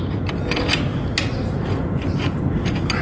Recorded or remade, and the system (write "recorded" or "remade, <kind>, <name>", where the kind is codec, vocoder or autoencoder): recorded